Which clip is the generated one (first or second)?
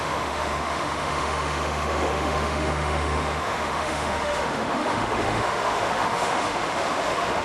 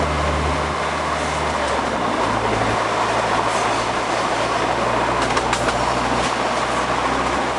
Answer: first